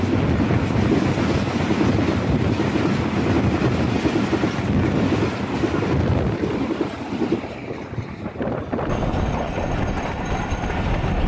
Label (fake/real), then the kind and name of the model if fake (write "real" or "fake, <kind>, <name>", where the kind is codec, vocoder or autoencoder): real